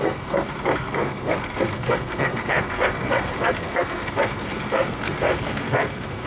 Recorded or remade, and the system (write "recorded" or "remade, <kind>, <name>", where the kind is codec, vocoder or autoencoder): remade, codec, SNAC